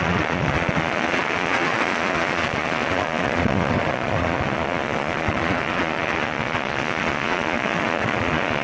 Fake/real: fake